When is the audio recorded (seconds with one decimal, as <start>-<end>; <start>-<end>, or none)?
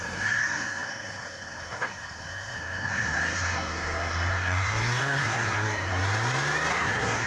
5.9-6.7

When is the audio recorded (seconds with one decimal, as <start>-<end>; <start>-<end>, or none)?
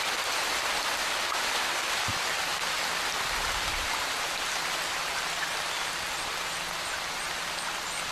0.0-8.1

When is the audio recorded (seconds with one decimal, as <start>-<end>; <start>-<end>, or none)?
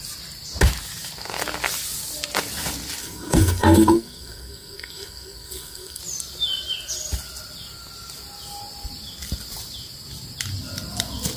0.0-3.0; 6.0-11.4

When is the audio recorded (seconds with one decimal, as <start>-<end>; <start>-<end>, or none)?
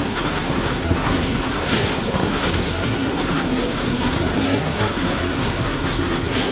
none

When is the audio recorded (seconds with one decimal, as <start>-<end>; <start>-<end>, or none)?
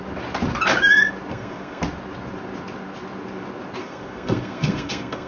0.0-1.3; 1.8-3.8